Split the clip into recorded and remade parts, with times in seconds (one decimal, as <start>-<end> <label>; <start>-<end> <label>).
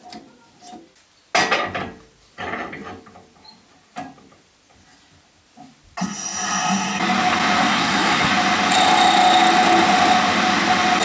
0.0-7.6 recorded; 7.6-8.3 remade; 8.3-11.0 recorded